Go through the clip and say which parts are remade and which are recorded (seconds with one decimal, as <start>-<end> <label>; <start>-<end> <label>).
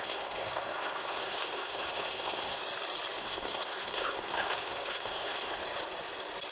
0.0-2.6 remade; 2.6-3.2 recorded; 3.2-5.6 remade; 5.6-6.5 recorded